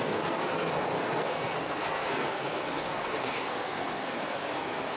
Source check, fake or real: fake